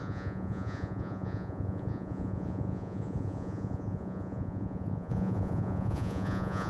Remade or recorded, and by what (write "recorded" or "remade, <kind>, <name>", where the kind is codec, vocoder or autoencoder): remade, vocoder, Vocos